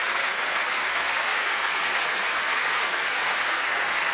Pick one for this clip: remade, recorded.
remade